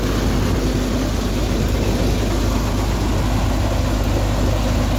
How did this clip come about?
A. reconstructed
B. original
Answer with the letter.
B